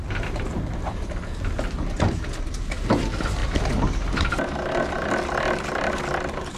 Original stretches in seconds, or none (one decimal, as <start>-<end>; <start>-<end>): 0.0-6.6